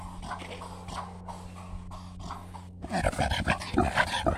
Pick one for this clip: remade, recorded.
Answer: recorded